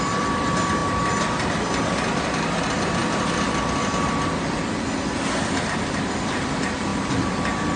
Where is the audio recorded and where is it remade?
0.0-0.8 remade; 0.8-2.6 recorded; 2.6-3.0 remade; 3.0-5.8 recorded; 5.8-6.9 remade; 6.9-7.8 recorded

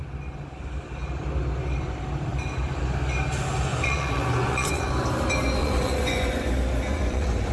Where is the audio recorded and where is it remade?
0.0-3.7 recorded; 3.7-4.9 remade; 4.9-5.6 recorded; 5.6-6.5 remade; 6.5-6.9 recorded; 6.9-7.5 remade

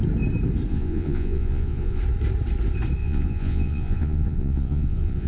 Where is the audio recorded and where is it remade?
0.0-0.7 recorded; 0.7-2.0 remade; 2.0-3.0 recorded; 3.0-5.3 remade

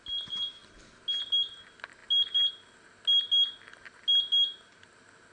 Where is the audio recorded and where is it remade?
0.0-5.3 recorded

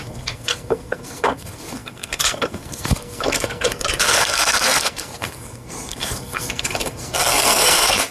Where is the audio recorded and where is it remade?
0.0-8.1 remade